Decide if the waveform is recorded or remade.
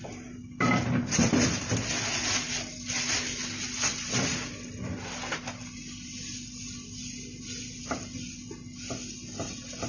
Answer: recorded